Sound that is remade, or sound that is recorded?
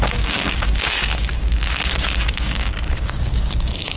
remade